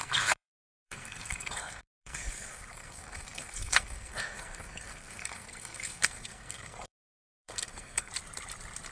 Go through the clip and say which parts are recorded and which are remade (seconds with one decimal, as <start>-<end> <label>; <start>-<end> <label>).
0.0-8.1 remade; 8.1-8.9 recorded